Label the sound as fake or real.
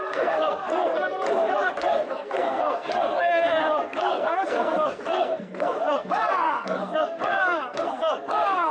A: fake